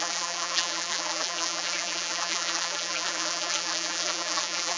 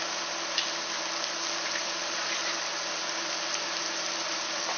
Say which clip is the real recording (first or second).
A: second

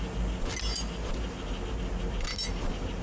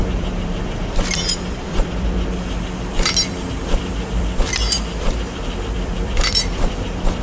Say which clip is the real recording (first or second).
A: first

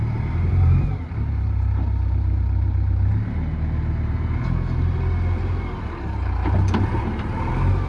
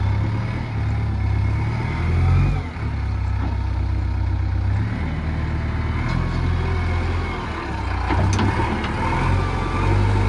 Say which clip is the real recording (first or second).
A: second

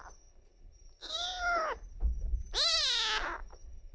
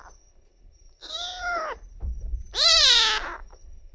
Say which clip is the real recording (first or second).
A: first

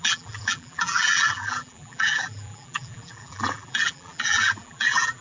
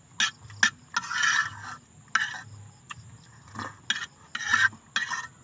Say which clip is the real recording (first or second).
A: second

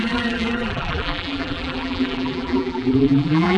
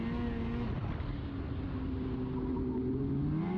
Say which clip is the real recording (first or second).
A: second